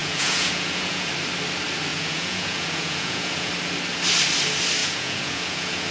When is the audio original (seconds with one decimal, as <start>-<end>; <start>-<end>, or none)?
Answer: 1.1-1.9; 3.5-4.8